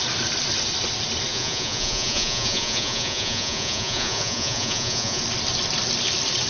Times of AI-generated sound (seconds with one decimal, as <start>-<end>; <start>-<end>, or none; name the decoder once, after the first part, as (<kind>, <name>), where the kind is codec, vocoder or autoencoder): 1.3-5.2 (vocoder, Vocos)